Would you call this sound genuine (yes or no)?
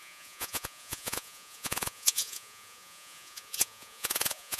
no